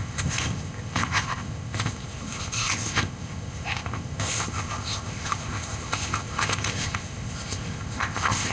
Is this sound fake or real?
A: fake